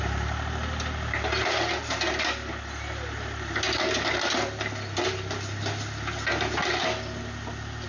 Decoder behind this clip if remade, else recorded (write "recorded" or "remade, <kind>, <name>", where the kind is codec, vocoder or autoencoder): recorded